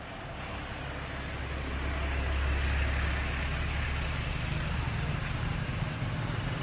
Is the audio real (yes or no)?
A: yes